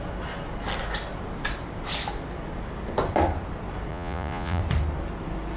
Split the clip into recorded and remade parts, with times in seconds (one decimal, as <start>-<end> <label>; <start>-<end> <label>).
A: 0.0-3.9 recorded; 3.9-4.6 remade; 4.6-5.6 recorded